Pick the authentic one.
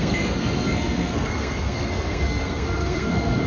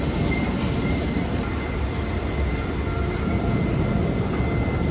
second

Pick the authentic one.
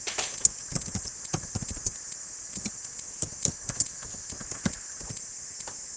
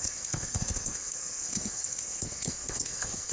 first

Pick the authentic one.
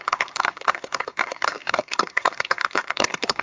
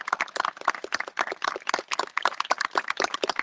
second